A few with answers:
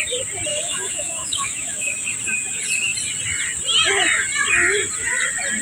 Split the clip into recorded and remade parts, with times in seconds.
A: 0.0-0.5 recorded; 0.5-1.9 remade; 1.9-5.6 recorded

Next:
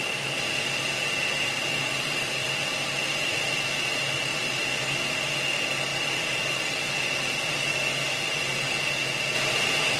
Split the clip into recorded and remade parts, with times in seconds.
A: 0.0-10.0 recorded

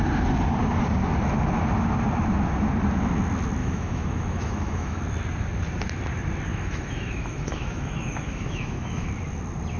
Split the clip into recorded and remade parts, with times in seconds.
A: 0.0-3.6 recorded; 3.6-5.0 remade; 5.0-6.5 recorded; 6.5-9.1 remade; 9.1-9.8 recorded